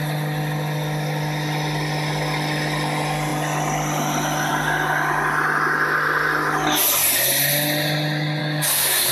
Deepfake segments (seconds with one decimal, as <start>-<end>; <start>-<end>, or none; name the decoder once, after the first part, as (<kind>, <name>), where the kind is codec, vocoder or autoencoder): 8.4-9.1 (codec, DAC)